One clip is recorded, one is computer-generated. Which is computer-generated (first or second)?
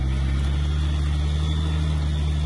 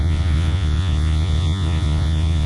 second